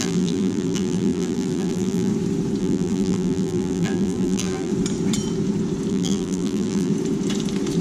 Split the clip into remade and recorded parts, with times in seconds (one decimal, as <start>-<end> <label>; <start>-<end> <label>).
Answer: 0.0-2.1 remade; 2.1-2.6 recorded; 2.6-4.7 remade; 4.7-5.9 recorded; 5.9-6.9 remade; 6.9-7.8 recorded